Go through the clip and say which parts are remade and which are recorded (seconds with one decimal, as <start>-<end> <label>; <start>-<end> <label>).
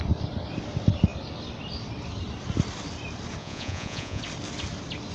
0.0-3.4 recorded; 3.4-4.2 remade; 4.2-5.1 recorded